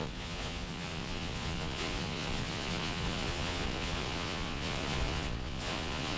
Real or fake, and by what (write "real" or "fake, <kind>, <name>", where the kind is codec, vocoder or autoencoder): fake, vocoder, Vocos